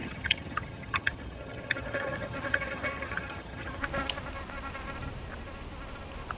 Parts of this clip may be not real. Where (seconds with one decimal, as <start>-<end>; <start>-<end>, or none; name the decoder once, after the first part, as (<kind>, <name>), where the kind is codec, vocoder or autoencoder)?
0.0-3.8 (vocoder, HiFi-GAN)